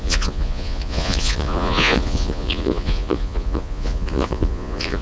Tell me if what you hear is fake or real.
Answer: fake